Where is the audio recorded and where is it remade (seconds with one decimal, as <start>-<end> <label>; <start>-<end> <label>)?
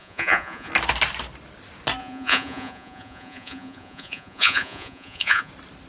0.0-0.7 remade; 0.7-2.0 recorded; 2.0-5.5 remade; 5.5-5.9 recorded